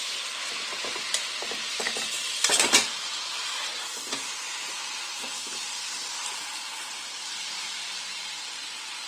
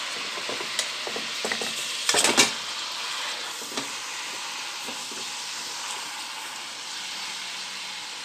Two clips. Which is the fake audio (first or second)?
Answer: first